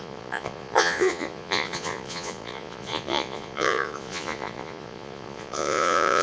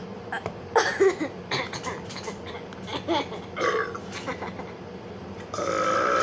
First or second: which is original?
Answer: second